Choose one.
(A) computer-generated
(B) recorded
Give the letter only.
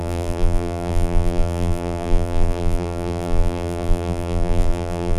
A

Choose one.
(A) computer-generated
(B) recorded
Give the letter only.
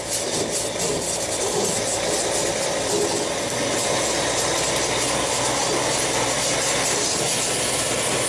B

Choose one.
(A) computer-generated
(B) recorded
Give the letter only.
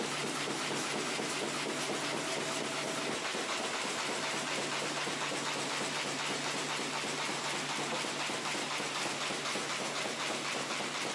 B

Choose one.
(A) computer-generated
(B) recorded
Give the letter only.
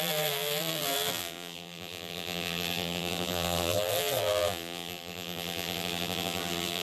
A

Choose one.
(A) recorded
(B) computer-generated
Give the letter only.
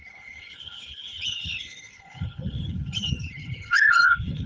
B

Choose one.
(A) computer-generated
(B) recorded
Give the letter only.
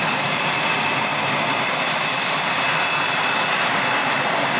B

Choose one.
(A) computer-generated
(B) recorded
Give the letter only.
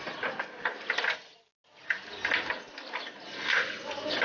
B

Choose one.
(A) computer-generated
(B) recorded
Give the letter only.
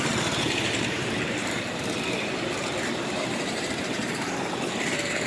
A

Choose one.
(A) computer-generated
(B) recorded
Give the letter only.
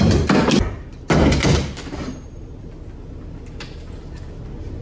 B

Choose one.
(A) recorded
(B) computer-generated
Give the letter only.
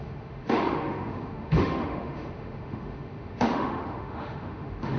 B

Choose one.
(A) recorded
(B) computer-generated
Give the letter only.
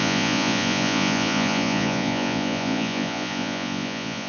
B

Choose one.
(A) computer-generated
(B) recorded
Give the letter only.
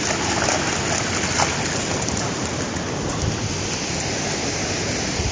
B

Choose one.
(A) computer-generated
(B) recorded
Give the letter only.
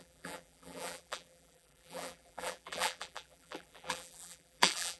A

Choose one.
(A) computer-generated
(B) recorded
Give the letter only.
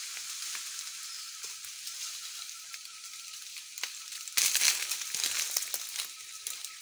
B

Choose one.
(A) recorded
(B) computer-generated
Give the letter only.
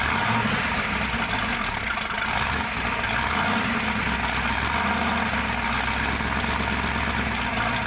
A